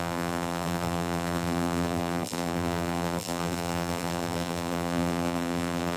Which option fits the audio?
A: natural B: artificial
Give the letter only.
B